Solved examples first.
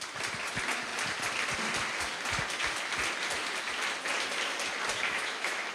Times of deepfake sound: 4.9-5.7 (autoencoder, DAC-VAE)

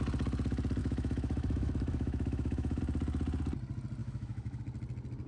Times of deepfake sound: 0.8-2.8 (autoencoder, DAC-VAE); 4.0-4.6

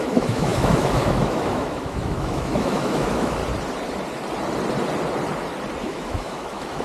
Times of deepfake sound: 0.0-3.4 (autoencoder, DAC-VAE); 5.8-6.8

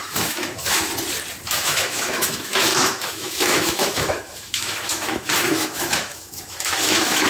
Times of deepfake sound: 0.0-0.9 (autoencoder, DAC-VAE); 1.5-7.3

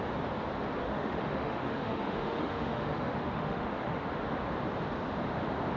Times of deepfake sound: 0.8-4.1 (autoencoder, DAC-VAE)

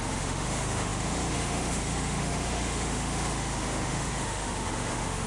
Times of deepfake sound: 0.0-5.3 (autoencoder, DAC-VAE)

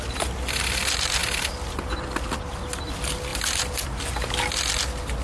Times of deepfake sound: none

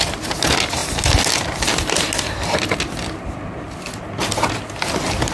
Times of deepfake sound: none